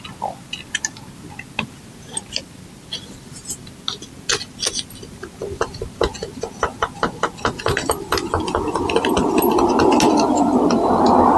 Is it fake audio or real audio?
real